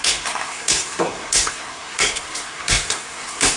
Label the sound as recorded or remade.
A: remade